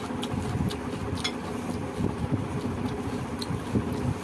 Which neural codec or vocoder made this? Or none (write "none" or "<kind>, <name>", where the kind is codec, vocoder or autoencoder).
none